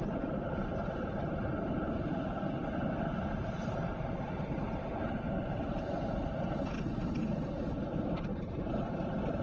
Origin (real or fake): real